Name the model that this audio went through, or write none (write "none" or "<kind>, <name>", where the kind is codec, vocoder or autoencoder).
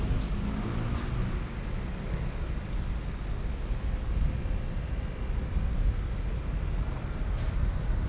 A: none